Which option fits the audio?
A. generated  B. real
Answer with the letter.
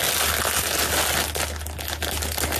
B